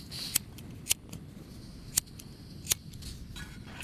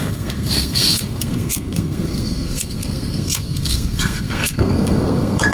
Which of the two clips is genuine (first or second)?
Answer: first